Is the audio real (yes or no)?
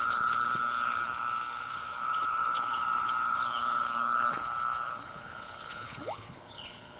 no